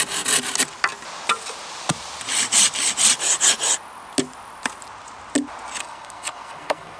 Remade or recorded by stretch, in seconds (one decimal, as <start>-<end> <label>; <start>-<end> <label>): 0.0-5.8 recorded; 5.8-7.0 remade